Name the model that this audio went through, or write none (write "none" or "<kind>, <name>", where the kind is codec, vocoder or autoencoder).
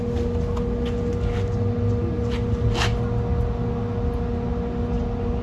none